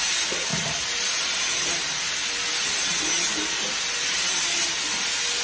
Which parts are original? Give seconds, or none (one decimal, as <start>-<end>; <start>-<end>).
0.0-5.4